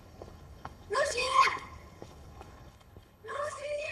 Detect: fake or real fake